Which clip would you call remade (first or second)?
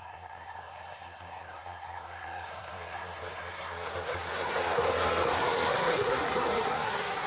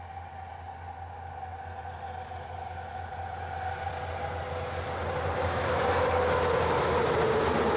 first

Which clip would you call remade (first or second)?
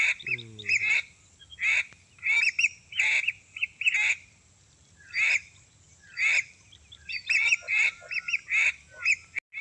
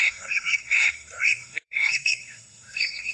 second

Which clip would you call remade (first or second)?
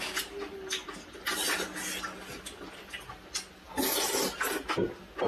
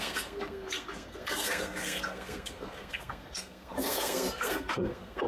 second